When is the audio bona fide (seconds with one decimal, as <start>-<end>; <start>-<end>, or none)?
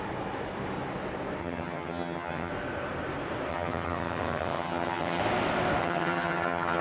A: 0.0-1.4; 2.5-3.5; 5.2-5.8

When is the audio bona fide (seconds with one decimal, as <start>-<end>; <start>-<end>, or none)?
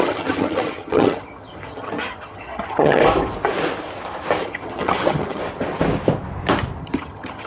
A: 3.0-4.4; 5.4-6.8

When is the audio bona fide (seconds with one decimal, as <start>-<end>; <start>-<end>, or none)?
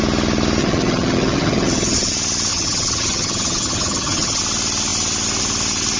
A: 0.0-0.6; 2.1-2.5; 4.4-6.0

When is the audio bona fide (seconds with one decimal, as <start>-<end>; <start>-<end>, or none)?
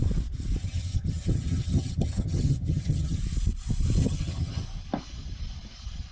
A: 0.0-0.6; 3.2-4.0; 4.6-6.1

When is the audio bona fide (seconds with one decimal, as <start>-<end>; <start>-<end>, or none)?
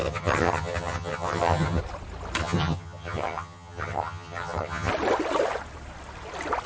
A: 1.8-2.4; 4.9-6.7